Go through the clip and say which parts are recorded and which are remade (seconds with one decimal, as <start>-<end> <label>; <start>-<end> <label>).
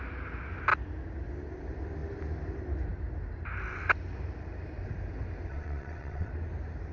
0.0-5.5 recorded; 5.5-6.3 remade; 6.3-6.9 recorded